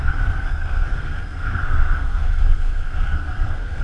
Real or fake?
fake